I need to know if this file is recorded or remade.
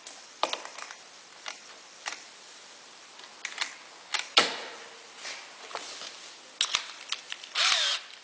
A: recorded